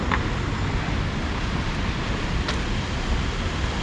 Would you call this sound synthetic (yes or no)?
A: no